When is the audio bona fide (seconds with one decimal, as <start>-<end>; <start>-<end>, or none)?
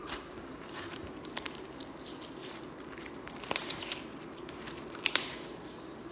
1.8-5.5